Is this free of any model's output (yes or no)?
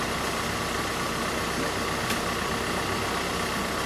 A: yes